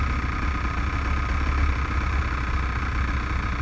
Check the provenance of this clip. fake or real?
real